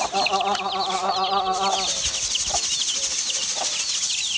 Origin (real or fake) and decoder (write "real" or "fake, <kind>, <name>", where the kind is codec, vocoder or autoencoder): real